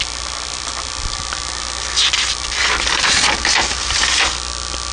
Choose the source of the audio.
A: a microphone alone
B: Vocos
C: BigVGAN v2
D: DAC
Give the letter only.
A